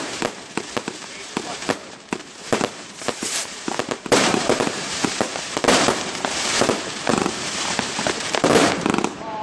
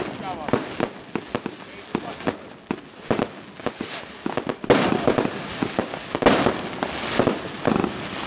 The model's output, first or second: first